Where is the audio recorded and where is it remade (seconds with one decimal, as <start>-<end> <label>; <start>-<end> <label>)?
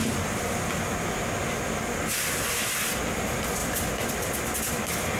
0.0-5.2 recorded